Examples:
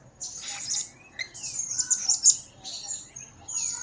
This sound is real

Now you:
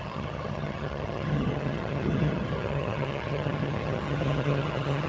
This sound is fake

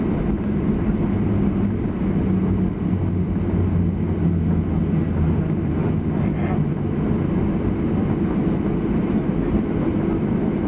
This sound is real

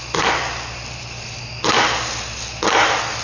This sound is real